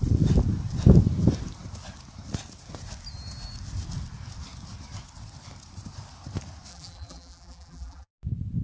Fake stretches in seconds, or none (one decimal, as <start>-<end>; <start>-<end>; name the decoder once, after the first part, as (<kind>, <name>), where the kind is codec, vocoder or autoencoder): 6.7-8.1 (vocoder, BigVGAN v2)